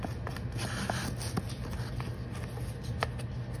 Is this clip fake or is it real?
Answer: real